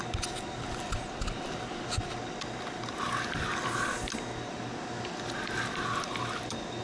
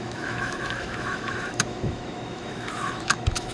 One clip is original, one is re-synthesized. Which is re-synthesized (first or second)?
second